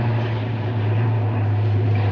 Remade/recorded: remade